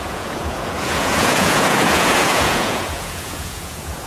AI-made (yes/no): yes